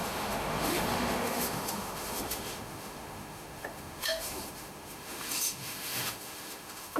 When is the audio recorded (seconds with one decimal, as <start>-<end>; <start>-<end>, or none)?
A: none